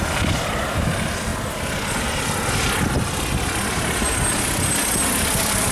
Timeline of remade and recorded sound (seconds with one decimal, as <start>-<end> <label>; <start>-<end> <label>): 0.0-5.7 recorded